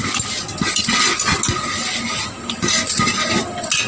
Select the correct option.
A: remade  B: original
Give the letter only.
B